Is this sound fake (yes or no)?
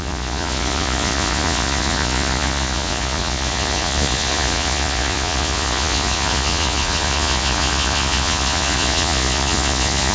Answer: yes